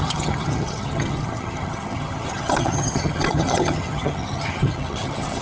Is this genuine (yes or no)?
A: no